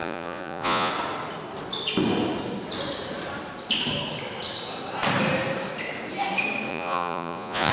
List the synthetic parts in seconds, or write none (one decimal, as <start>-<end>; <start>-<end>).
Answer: 0.0-0.9; 6.7-7.7